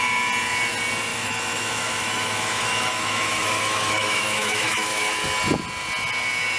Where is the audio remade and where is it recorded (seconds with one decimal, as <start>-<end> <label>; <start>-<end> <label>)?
0.0-1.1 recorded; 1.1-5.1 remade; 5.1-6.6 recorded